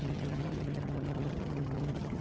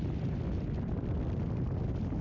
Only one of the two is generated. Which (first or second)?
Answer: first